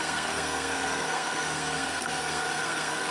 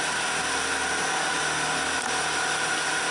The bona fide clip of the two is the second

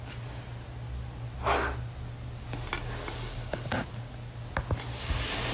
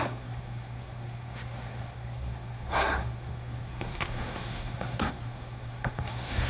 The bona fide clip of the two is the first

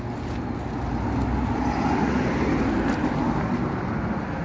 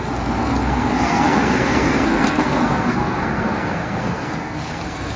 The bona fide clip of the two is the first